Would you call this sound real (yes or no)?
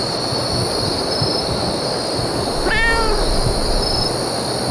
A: yes